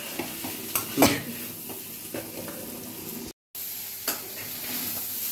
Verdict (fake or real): real